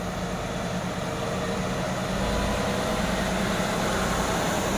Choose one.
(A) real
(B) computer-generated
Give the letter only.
A